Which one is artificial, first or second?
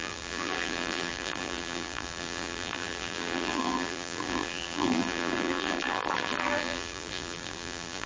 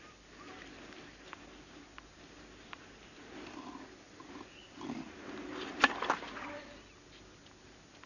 first